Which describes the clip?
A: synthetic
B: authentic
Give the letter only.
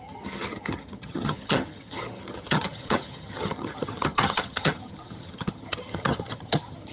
A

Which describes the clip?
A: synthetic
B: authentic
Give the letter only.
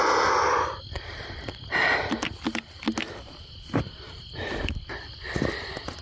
B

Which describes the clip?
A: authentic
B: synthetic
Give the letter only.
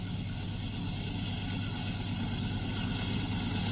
A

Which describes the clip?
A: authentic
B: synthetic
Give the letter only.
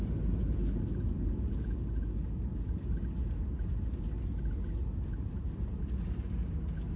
A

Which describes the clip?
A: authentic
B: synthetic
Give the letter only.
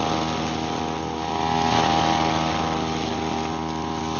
A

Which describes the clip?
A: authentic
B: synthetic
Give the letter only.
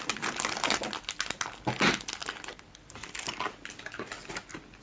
A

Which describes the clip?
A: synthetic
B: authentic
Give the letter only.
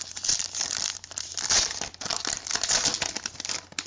B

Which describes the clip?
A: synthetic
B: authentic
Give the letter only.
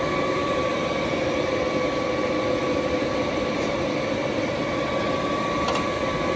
B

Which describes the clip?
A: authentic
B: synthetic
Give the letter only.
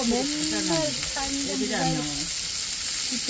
A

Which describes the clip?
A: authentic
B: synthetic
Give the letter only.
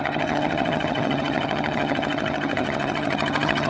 B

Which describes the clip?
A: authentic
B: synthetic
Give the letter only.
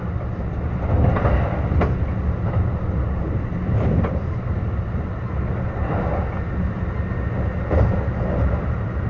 A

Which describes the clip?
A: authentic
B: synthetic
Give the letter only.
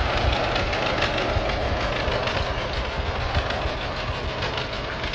A